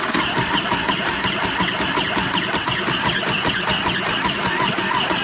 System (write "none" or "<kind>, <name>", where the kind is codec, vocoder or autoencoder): none